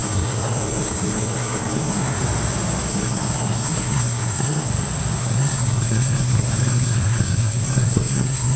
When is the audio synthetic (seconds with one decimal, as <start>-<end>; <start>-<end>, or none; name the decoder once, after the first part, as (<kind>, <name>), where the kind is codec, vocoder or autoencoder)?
0.0-2.2 (codec, SNAC); 2.9-4.7; 5.2-8.6